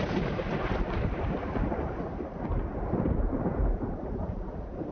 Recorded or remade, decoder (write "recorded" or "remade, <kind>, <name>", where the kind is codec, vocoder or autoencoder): recorded